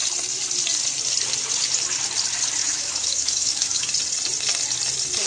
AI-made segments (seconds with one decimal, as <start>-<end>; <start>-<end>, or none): 2.6-3.9